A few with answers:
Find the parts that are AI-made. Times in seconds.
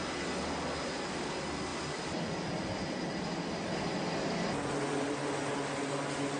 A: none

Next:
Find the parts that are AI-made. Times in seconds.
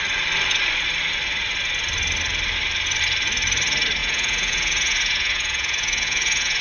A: 4.0-6.6 (vocoder, Vocos)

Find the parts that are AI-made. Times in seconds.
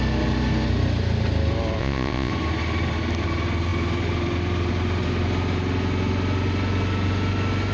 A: 1.8-2.3 (vocoder, Vocos)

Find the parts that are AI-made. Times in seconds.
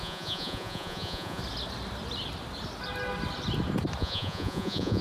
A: 0.0-1.4 (vocoder, Vocos); 4.0-5.0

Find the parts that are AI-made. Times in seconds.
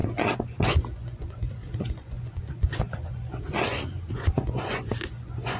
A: 0.0-5.6 (vocoder, Vocos)